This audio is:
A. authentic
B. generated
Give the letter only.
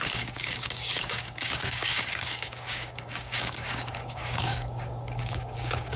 B